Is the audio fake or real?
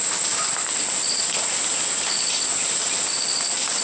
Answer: real